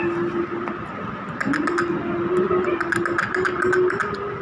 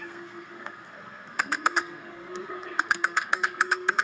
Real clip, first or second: first